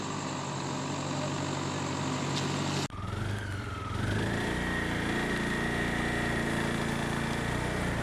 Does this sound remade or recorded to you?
recorded